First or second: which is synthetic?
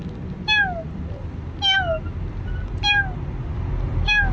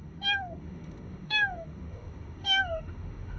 second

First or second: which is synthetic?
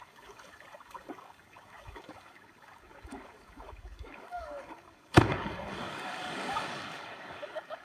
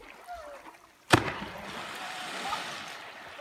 first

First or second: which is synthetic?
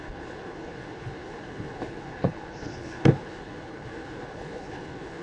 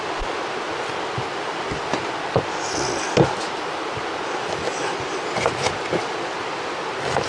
first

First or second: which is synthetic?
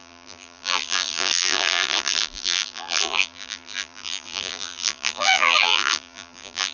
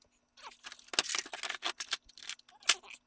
first